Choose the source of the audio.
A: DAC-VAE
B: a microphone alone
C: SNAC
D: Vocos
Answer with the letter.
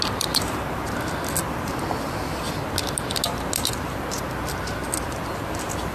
B